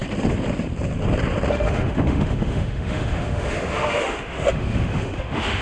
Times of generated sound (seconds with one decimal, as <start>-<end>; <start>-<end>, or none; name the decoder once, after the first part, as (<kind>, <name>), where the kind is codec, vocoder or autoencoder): 1.5-5.6 (autoencoder, DAC-VAE)